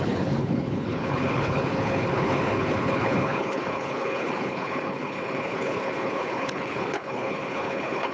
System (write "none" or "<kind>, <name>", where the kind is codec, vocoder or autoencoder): codec, HILCodec